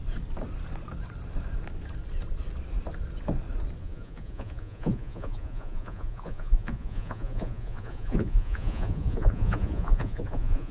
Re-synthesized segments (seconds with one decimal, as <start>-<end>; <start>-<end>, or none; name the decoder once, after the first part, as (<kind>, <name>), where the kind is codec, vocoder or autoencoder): 3.8-10.7 (vocoder, Vocos)